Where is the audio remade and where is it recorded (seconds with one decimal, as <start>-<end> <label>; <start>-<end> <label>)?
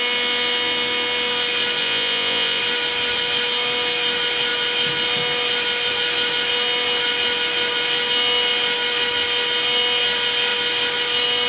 0.0-1.8 recorded; 1.8-2.6 remade; 2.6-11.5 recorded